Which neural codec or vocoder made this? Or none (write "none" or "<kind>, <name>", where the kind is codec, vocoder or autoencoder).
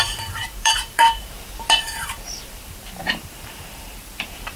vocoder, BigVGAN v2